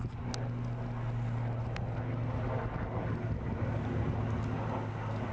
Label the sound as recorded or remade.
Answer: recorded